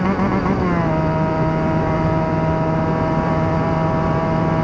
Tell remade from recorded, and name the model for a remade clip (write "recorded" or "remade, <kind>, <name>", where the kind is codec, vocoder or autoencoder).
recorded